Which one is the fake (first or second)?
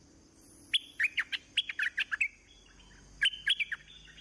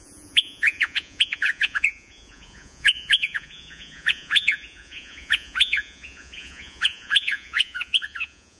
second